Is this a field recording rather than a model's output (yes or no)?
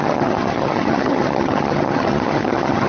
no